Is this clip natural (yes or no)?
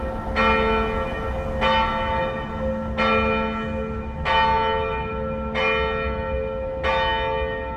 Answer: yes